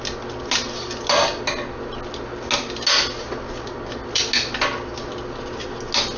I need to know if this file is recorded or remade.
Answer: recorded